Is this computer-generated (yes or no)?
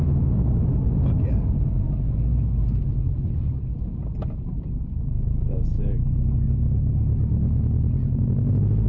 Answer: no